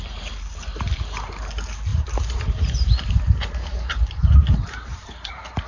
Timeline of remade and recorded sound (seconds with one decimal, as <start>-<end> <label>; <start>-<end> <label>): 0.0-1.9 recorded; 1.9-5.3 remade; 5.3-5.7 recorded